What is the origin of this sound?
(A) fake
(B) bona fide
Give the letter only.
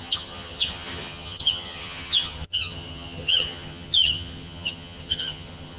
A